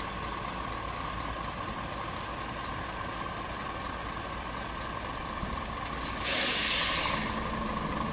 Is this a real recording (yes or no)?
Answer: yes